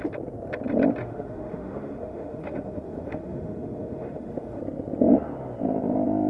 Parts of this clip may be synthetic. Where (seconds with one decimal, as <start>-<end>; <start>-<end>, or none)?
1.0-4.6